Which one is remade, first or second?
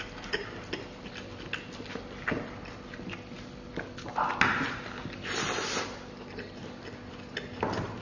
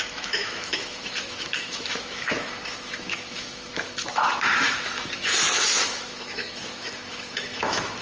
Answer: second